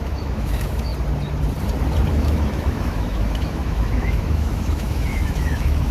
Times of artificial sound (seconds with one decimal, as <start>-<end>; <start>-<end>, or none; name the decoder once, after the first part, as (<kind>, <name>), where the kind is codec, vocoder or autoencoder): 0.0-0.9 (autoencoder, DAC-VAE); 2.1-5.9